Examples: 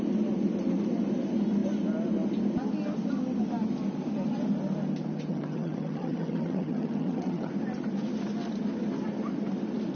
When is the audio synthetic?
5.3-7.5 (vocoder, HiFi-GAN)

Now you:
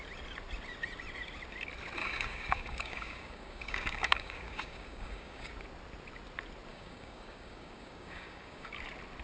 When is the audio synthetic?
2.0-5.5 (codec, DAC); 6.7-8.7

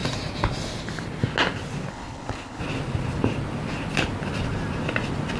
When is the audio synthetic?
1.9-2.6 (codec, HILCodec)

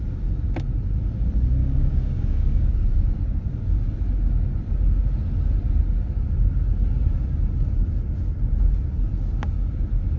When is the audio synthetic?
1.6-2.7 (codec, DAC)

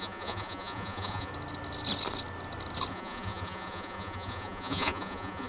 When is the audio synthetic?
0.0-1.3 (vocoder, Vocos); 2.9-5.5

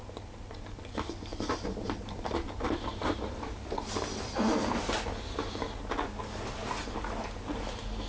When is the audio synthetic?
none

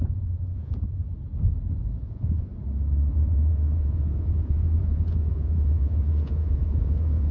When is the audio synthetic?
0.0-1.0 (vocoder, Vocos); 2.0-2.5; 3.1-7.3